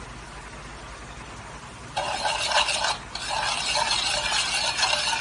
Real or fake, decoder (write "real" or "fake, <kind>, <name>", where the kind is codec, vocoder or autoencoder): real